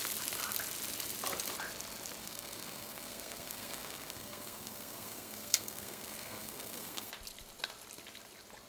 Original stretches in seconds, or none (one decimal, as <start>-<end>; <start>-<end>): 0.0-2.2; 7.1-8.7